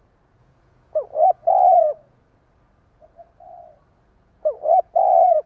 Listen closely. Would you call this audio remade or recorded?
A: remade